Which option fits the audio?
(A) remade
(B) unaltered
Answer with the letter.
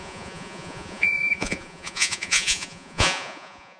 A